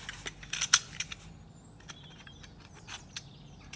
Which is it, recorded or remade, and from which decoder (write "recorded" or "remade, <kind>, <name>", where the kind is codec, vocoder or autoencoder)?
recorded